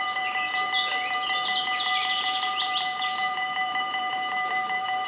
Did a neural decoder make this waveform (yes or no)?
yes